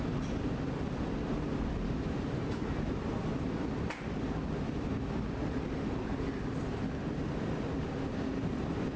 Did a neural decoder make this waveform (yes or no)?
no